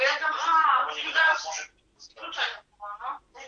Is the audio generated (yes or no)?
no